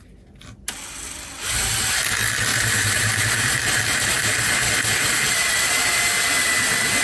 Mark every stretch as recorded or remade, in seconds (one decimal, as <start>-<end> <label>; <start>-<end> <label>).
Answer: 0.0-2.5 recorded; 2.5-6.0 remade; 6.0-7.0 recorded